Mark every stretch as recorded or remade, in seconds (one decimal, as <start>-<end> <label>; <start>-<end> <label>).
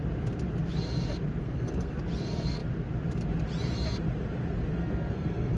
0.0-1.4 recorded; 1.4-2.0 remade; 2.0-4.7 recorded; 4.7-5.6 remade